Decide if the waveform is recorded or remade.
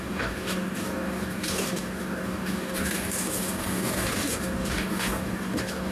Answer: remade